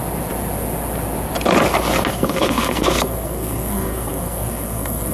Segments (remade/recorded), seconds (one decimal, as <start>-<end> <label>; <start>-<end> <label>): 0.0-2.1 recorded; 2.1-5.1 remade